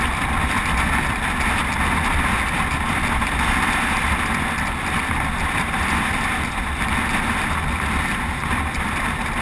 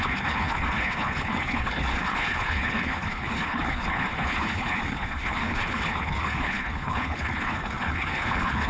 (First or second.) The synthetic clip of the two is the second